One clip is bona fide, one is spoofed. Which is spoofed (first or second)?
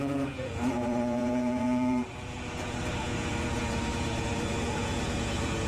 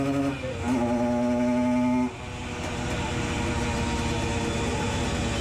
first